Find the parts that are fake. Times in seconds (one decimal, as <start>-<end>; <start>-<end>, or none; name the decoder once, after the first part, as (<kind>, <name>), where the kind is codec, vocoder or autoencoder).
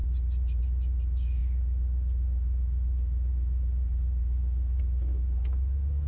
0.0-0.6 (vocoder, BigVGAN v2); 1.4-4.8